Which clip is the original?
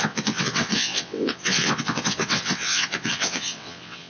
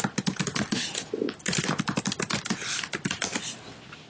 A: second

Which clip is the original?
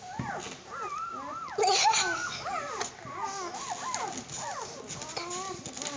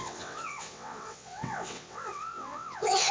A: first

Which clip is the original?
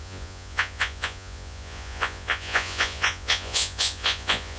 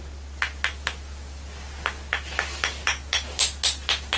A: second